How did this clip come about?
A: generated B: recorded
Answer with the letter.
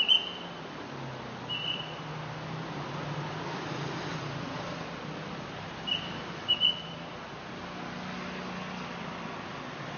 B